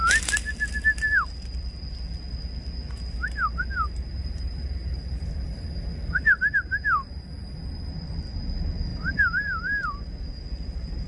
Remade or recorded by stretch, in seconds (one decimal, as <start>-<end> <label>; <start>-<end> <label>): 0.0-4.1 recorded; 4.1-5.7 remade; 5.7-8.9 recorded; 8.9-10.4 remade; 10.4-11.1 recorded